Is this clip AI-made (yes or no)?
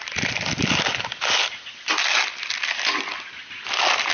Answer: no